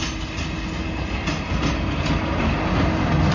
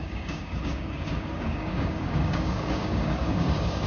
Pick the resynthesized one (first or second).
second